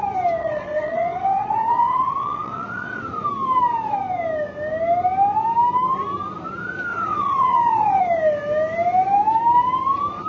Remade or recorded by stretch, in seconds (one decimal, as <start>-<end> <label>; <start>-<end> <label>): 0.0-0.4 recorded; 0.4-3.0 remade; 3.0-6.9 recorded; 6.9-8.0 remade; 8.0-10.3 recorded